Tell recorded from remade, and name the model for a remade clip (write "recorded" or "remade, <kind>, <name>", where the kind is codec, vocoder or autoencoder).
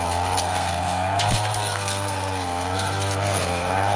remade, codec, SNAC